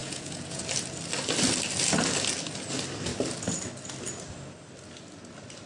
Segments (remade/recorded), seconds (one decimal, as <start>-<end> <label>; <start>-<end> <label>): 0.0-0.6 remade; 0.6-5.7 recorded